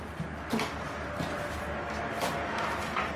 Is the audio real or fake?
fake